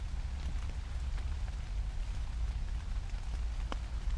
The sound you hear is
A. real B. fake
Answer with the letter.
A